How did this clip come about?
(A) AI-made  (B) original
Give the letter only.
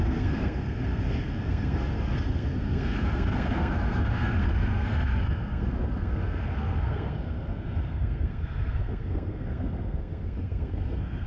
A